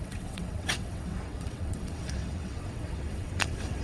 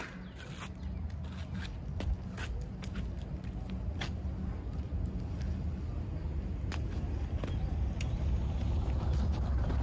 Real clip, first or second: second